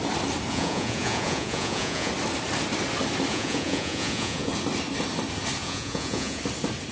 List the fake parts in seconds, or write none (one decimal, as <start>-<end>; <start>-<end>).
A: 0.5-2.1; 3.3-4.5; 5.6-6.4